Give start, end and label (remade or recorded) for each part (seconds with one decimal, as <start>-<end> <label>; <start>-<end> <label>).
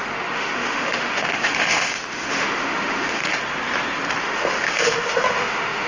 0.0-3.2 remade; 3.2-4.2 recorded; 4.2-5.9 remade